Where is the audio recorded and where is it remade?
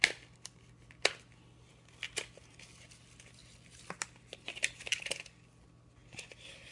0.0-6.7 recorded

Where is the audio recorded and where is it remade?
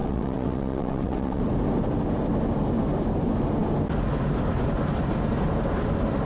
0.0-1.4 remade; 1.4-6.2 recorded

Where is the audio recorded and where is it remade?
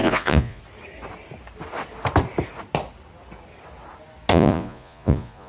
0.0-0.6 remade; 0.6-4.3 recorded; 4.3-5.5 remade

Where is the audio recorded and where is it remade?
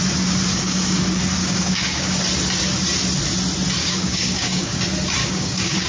0.0-0.5 recorded; 0.5-1.0 remade; 1.0-1.4 recorded; 1.4-2.2 remade; 2.2-3.8 recorded; 3.8-4.8 remade; 4.8-5.2 recorded; 5.2-5.9 remade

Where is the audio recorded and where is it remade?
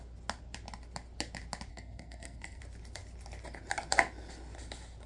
0.0-1.7 recorded; 1.7-2.6 remade; 2.6-5.1 recorded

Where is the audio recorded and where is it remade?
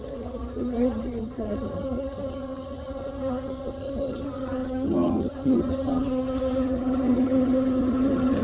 0.0-8.4 remade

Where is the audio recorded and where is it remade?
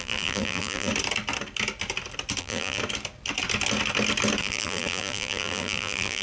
0.0-0.9 remade; 0.9-2.4 recorded; 2.4-2.8 remade; 2.8-4.4 recorded; 4.4-6.2 remade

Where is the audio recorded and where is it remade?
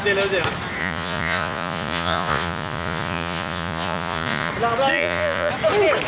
0.0-0.8 recorded; 0.8-4.5 remade; 4.5-4.9 recorded; 4.9-5.5 remade; 5.5-6.1 recorded